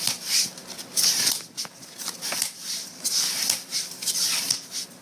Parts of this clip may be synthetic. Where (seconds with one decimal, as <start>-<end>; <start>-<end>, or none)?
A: none